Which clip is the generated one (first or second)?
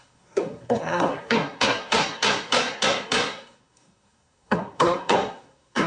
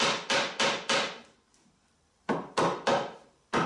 first